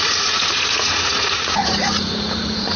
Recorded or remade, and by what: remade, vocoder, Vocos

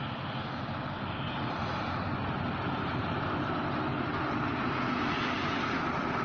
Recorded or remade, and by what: recorded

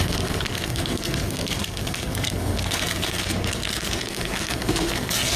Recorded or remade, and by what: remade, codec, SNAC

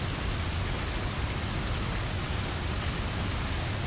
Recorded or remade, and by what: recorded